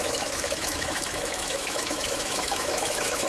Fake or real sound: fake